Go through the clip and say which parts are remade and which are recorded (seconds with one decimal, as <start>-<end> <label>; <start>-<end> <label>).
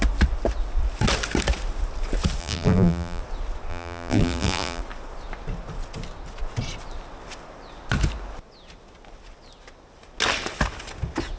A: 0.0-2.4 recorded; 2.4-3.2 remade; 3.2-3.7 recorded; 3.7-4.8 remade; 4.8-11.4 recorded